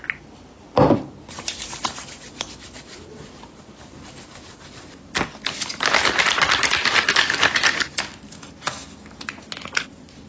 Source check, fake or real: real